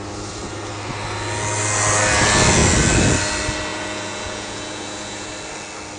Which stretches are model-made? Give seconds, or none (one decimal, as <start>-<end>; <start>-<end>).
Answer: 3.7-5.3